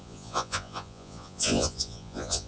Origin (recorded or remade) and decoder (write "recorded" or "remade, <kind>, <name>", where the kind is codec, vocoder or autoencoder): remade, vocoder, Vocos